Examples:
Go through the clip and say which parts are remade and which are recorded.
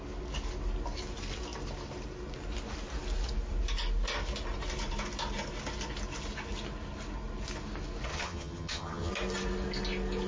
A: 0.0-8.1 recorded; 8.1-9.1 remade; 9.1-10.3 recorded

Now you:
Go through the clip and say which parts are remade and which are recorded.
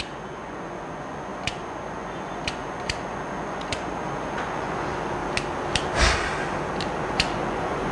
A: 0.0-5.2 remade; 5.2-7.0 recorded; 7.0-7.9 remade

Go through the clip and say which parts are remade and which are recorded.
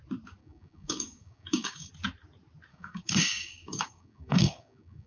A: 0.0-0.4 recorded; 0.4-1.9 remade; 1.9-2.7 recorded; 2.7-5.1 remade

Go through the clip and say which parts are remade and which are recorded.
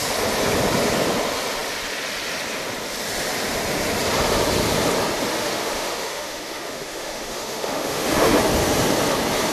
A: 0.0-5.3 recorded; 5.3-8.4 remade; 8.4-9.5 recorded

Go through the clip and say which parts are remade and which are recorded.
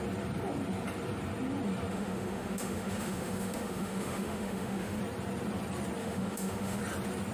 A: 0.0-1.9 recorded; 1.9-5.0 remade; 5.0-6.0 recorded; 6.0-6.8 remade; 6.8-7.3 recorded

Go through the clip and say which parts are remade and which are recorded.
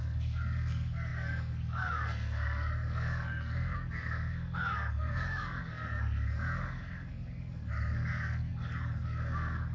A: 0.0-9.7 remade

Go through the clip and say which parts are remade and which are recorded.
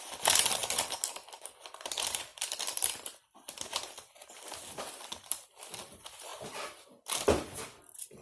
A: 0.0-0.6 remade; 0.6-1.7 recorded; 1.7-6.3 remade; 6.3-7.0 recorded; 7.0-8.2 remade